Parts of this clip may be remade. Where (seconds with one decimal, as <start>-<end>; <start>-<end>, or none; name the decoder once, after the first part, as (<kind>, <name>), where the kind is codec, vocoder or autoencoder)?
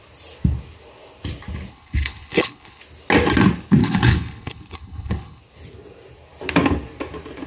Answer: 1.7-2.8 (codec, HILCodec); 3.8-5.4